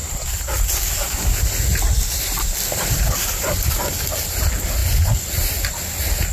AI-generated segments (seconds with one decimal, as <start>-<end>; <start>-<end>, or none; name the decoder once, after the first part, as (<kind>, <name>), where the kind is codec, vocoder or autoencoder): none